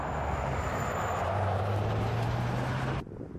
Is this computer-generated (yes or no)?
no